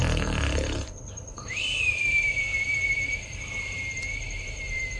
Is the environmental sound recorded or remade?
remade